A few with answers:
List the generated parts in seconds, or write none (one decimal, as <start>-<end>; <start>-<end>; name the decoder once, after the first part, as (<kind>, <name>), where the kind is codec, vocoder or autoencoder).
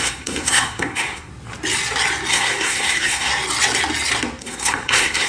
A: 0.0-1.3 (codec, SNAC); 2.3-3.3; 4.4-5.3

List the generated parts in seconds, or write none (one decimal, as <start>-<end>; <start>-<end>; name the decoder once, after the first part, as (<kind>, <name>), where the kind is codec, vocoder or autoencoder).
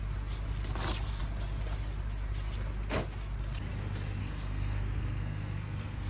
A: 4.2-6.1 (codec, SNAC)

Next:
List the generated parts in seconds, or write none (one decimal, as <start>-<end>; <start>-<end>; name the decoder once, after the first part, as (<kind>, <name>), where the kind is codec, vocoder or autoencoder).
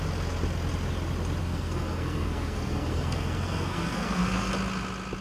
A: 1.4-4.5 (codec, SNAC)